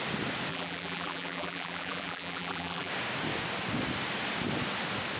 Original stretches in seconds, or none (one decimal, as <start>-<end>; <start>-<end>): 0.0-0.5; 2.9-5.2